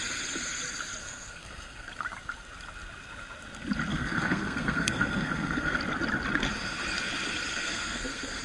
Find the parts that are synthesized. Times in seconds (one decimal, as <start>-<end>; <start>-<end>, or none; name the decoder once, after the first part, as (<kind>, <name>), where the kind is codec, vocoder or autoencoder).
1.0-1.9 (codec, SNAC); 3.9-5.8; 7.5-8.4